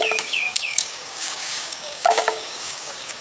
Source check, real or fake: fake